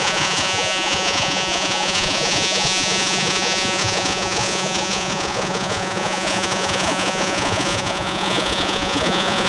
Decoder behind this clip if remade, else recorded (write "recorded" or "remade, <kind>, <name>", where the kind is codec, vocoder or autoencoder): remade, vocoder, Vocos